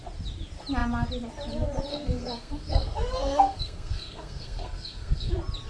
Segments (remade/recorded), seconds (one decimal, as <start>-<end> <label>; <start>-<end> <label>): 0.0-1.9 recorded; 1.9-5.3 remade; 5.3-5.7 recorded